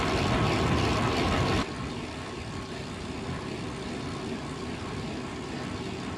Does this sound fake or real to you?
real